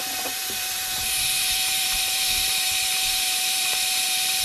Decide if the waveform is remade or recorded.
remade